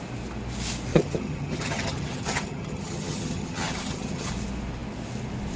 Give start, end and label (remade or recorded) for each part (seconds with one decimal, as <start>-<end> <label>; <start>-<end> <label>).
0.0-0.9 recorded; 0.9-4.3 remade; 4.3-5.6 recorded